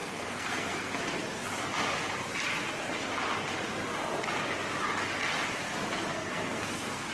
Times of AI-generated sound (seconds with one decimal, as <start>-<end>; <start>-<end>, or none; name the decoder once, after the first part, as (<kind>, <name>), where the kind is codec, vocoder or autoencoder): 0.0-1.0 (codec, SNAC); 6.1-7.1